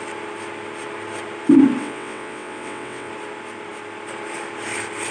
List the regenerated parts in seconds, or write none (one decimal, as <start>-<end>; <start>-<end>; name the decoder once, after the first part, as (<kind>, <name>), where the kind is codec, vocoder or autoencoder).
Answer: 1.8-3.1 (vocoder, WaveNeXt)